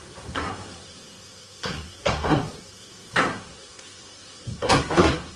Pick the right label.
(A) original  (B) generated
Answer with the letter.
B